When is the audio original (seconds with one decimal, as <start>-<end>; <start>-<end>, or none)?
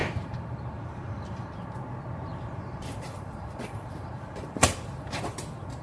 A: 1.1-2.3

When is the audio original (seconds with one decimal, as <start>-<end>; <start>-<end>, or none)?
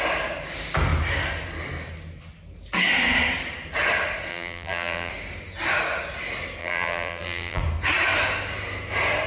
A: 0.0-4.3; 5.1-6.6; 7.6-9.3